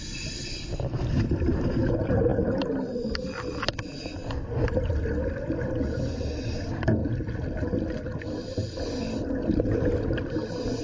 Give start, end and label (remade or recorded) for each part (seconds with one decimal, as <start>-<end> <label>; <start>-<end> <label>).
0.0-10.8 recorded